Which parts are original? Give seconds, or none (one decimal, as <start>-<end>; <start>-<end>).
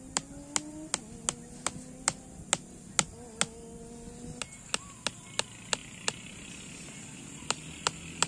0.0-8.3